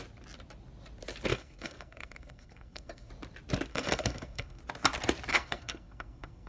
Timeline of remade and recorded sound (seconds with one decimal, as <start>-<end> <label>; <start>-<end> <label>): 0.0-1.3 recorded; 1.3-3.1 remade; 3.1-3.7 recorded; 3.7-4.6 remade; 4.6-5.3 recorded; 5.3-6.5 remade